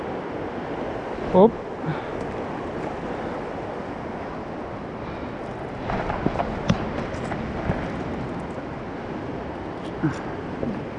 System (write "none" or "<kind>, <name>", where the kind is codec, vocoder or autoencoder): none